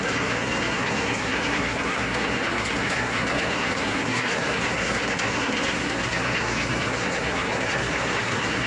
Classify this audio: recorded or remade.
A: remade